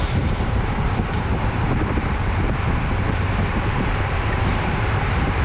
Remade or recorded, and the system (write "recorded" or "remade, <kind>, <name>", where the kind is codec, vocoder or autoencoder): remade, vocoder, BigVGAN v2